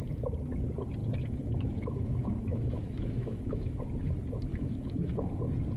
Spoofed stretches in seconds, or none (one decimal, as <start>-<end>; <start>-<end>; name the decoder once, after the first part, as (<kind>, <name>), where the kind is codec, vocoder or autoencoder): 1.0-3.7 (autoencoder, DAC-VAE); 4.5-5.3